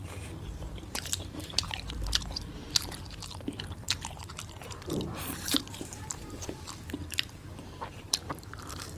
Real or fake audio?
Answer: fake